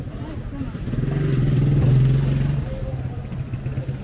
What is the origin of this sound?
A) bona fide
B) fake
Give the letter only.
A